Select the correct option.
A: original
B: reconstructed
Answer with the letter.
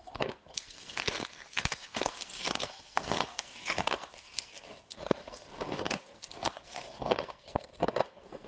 B